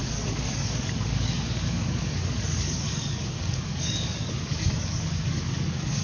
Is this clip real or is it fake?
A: fake